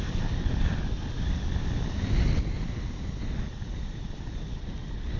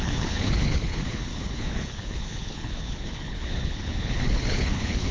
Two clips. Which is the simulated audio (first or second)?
second